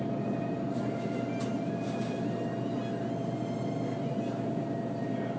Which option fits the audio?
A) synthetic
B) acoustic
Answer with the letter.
B